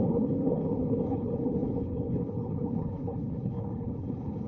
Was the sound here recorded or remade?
remade